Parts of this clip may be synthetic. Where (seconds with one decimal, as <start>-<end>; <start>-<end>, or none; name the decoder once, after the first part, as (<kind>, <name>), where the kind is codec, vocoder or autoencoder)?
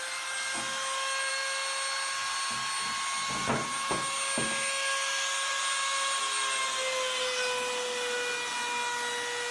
none